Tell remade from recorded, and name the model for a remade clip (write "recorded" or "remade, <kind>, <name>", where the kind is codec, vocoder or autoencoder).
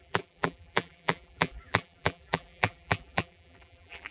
remade, vocoder, BigVGAN v2